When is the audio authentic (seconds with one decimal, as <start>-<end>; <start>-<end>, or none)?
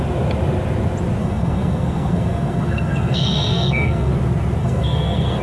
0.0-1.2; 4.1-4.6